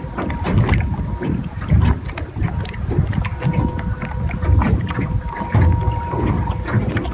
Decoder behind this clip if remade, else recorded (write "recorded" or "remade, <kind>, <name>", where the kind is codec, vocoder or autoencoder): remade, vocoder, BigVGAN v2